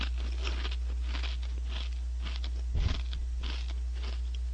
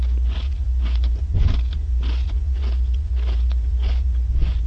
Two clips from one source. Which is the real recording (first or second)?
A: first